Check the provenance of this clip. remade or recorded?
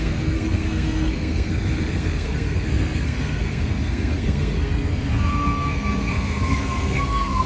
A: remade